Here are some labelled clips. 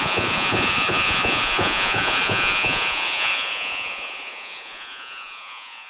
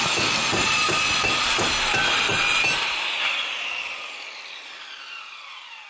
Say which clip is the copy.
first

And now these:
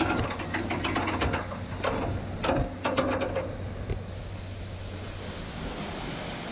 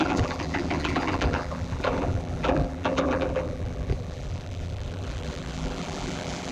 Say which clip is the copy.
second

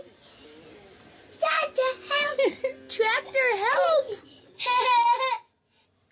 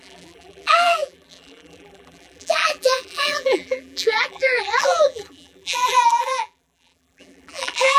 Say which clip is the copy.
second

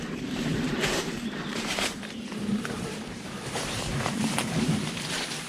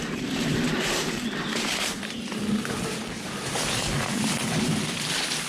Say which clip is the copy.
first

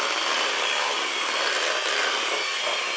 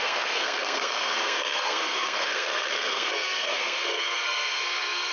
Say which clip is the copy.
second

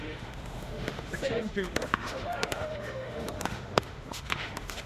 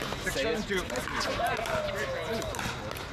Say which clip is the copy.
first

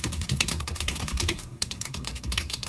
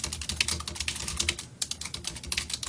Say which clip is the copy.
first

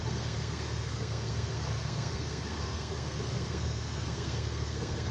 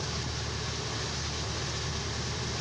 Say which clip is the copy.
first